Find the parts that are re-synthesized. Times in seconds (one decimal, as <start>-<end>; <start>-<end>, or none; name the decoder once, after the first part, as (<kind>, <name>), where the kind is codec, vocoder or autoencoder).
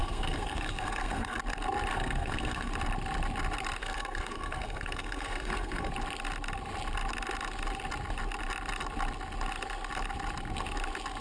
0.0-1.4 (codec, SNAC); 1.9-2.7; 3.8-5.9